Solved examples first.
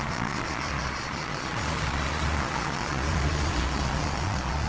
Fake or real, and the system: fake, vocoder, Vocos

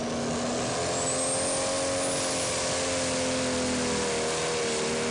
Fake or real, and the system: real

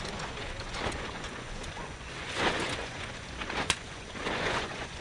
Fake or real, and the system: fake, vocoder, Vocos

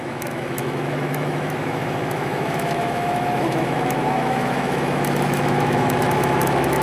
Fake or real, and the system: fake, autoencoder, DAC-VAE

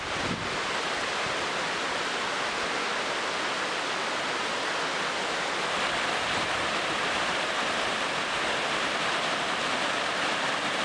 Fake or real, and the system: real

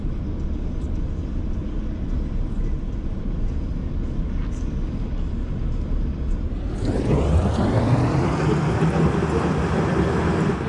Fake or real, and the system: real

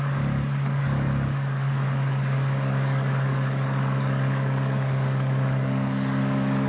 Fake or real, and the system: fake, codec, DAC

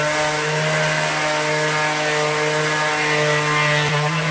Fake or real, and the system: real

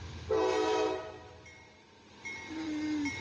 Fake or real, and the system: real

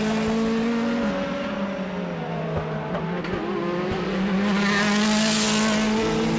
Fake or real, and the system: real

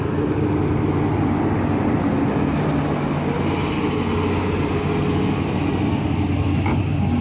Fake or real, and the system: real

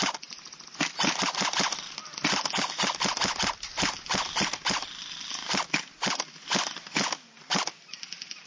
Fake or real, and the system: real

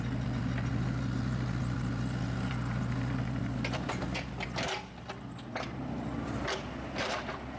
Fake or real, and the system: real